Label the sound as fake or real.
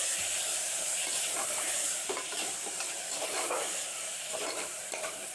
fake